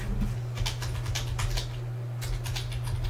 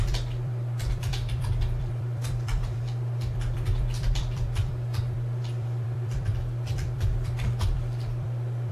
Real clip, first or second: first